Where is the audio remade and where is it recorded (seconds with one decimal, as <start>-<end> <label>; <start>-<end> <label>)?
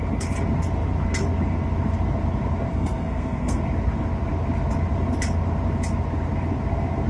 0.0-2.7 recorded; 2.7-3.6 remade; 3.6-7.1 recorded